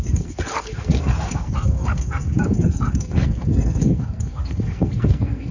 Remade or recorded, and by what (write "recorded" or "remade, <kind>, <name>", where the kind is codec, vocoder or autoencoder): remade, codec, SNAC